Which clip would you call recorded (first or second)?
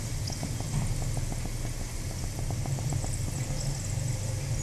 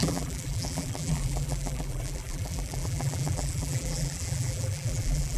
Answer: first